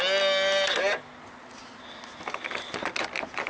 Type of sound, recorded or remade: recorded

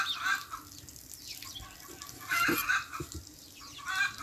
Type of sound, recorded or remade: recorded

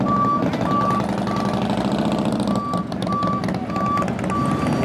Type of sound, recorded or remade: recorded